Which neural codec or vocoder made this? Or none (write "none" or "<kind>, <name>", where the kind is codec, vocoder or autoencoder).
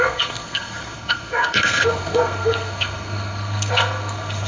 codec, SNAC